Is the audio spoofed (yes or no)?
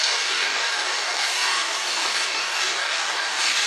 yes